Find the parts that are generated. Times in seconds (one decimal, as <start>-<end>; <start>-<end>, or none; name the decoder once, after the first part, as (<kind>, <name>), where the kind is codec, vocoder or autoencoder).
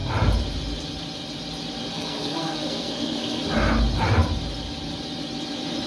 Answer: 1.9-3.4 (codec, SNAC)